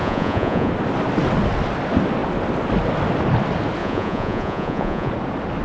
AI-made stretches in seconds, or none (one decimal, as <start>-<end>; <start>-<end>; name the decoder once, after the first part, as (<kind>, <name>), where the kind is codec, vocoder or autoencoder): 0.0-0.7 (vocoder, Vocos); 3.8-5.1